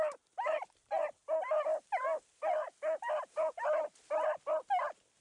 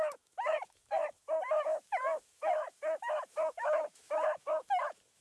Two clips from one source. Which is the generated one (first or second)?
second